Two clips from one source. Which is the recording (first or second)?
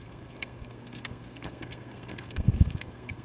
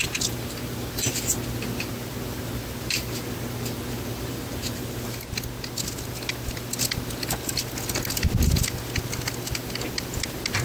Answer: second